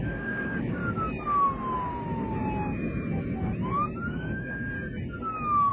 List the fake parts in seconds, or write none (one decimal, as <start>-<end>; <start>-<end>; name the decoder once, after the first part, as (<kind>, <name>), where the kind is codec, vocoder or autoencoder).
0.0-0.8 (codec, DAC); 4.1-4.7